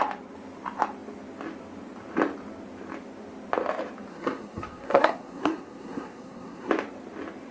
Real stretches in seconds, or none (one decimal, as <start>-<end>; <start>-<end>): 0.0-4.1; 6.7-7.5